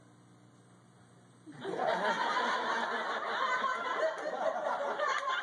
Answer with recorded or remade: recorded